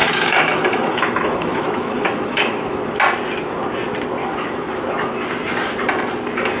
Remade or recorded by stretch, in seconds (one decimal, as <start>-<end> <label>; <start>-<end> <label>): 0.0-3.0 remade; 3.0-4.2 recorded; 4.2-4.7 remade; 4.7-6.6 recorded